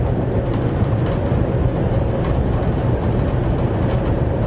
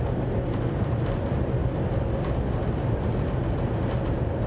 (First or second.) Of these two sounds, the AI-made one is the first